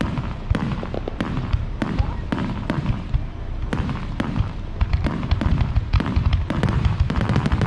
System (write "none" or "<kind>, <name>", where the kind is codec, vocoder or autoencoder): vocoder, BigVGAN v2